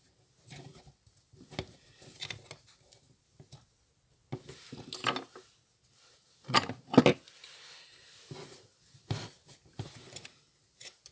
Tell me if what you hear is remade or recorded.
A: recorded